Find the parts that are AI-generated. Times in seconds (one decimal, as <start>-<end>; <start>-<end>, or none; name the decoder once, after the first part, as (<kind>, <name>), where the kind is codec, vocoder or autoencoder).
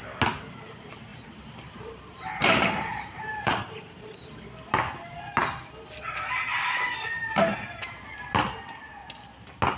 1.1-4.4 (vocoder, BigVGAN v2)